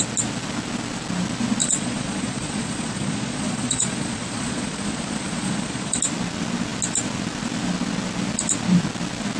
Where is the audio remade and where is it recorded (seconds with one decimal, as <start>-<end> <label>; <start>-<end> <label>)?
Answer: 0.0-1.6 recorded; 1.6-6.0 remade; 6.0-9.4 recorded